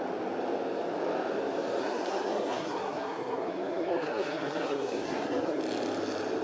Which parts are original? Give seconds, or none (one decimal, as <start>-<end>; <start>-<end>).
0.0-1.8; 5.6-6.4